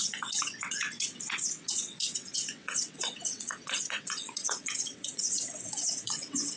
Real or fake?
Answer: fake